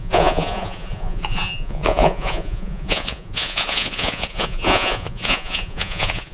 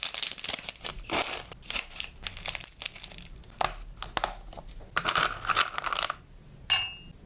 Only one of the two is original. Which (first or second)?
second